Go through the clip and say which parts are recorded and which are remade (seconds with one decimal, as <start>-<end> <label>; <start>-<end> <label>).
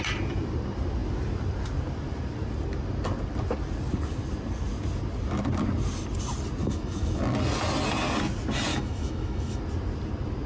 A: 0.0-6.6 recorded; 6.6-7.2 remade; 7.2-8.7 recorded; 8.7-9.6 remade; 9.6-10.5 recorded